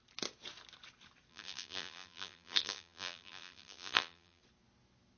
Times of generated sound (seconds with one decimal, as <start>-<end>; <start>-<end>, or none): 1.3-4.4